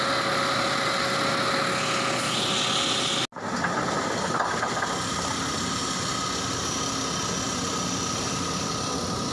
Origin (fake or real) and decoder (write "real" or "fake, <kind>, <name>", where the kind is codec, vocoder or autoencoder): real